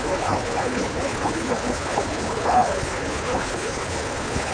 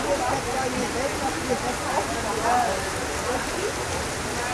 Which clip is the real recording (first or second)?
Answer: second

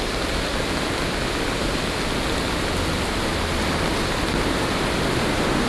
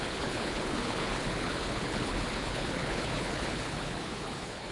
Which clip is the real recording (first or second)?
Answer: first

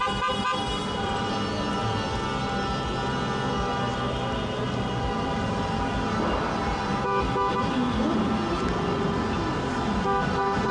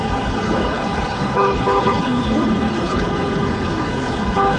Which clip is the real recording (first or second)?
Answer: first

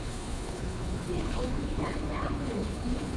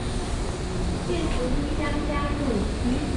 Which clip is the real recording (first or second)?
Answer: second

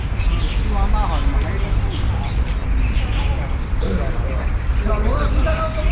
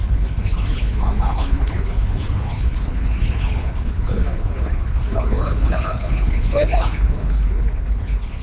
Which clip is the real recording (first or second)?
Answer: first